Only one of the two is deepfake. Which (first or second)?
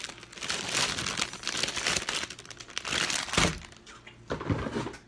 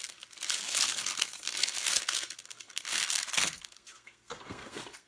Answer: second